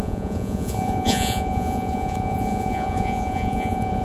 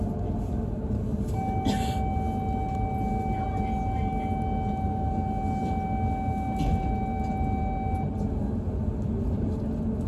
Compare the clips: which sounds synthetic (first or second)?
first